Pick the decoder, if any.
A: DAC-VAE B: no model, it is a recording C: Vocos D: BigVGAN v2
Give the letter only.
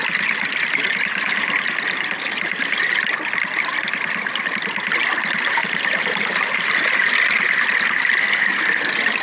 B